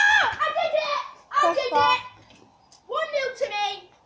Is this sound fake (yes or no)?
no